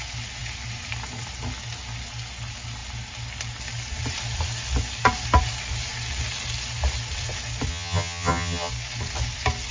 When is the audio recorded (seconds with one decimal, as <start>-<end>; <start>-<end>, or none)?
0.0-7.7; 8.7-9.7